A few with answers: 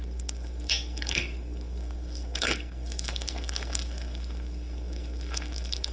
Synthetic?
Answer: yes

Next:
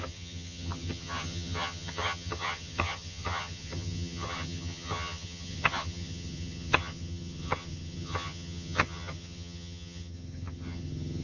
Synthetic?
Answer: yes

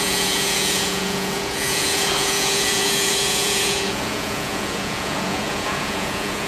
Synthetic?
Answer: yes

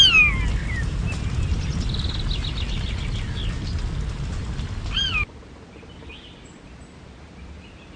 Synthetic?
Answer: no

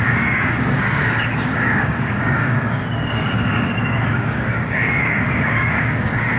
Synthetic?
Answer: yes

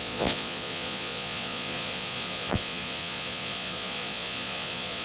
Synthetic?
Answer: yes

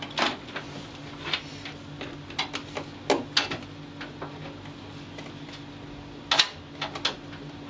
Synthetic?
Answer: no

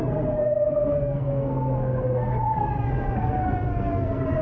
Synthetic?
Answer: yes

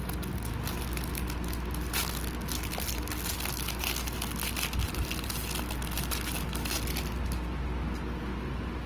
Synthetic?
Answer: no